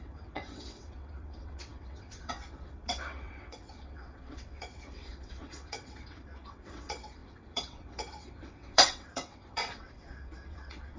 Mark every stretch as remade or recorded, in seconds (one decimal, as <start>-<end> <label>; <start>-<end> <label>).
0.0-11.0 remade